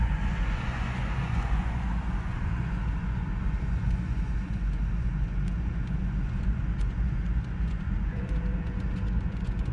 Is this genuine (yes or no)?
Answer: no